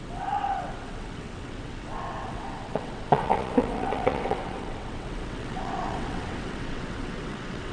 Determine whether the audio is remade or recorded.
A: remade